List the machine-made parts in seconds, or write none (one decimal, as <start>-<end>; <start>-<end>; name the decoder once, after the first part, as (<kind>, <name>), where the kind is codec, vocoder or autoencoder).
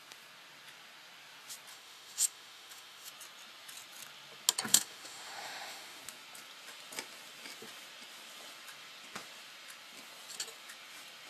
1.7-3.1 (autoencoder, DAC-VAE); 4.7-6.0